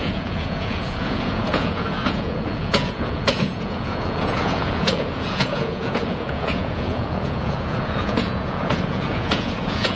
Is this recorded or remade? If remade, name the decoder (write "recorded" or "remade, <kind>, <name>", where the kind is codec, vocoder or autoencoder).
remade, vocoder, Vocos